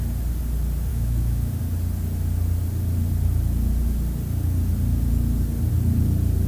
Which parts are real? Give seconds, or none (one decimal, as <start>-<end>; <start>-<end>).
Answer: 0.0-0.9; 1.6-6.5